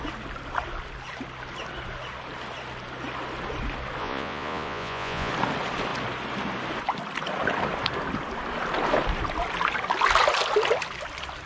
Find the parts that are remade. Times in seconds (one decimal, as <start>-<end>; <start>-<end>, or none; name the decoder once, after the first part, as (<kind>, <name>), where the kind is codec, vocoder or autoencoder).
4.0-5.3 (vocoder, Vocos)

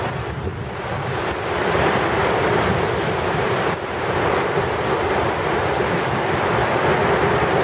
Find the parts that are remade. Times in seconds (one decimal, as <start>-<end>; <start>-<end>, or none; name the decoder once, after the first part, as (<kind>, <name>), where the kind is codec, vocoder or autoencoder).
none

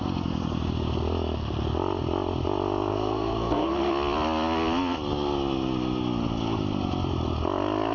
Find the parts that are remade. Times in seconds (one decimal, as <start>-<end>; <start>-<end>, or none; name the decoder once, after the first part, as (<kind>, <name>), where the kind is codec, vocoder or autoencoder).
2.9-3.9 (codec, SNAC)